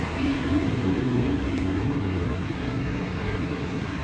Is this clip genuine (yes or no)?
no